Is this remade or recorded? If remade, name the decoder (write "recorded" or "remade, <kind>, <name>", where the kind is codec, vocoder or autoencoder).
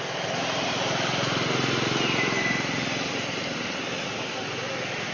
recorded